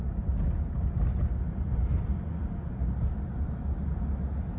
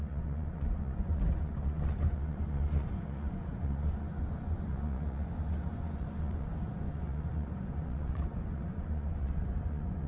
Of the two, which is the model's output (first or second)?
second